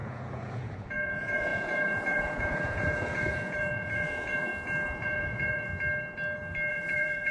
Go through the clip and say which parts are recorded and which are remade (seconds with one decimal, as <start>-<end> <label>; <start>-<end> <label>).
0.0-4.5 remade; 4.5-5.0 recorded; 5.0-5.7 remade; 5.7-6.7 recorded; 6.7-7.3 remade